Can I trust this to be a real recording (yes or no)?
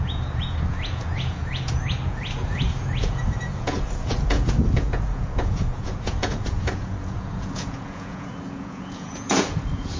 no